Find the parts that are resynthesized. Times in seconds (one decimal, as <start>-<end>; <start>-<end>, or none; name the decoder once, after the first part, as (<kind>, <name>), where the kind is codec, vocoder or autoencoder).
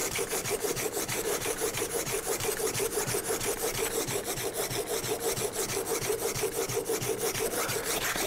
0.0-4.3 (vocoder, BigVGAN v2)